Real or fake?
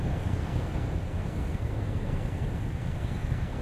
fake